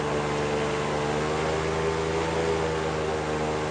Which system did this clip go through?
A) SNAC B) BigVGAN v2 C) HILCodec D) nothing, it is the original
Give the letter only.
D